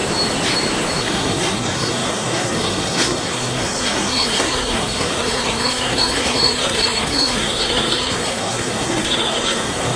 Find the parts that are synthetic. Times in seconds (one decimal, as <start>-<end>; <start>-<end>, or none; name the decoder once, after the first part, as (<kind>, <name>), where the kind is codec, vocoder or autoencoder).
1.0-10.0 (codec, SNAC)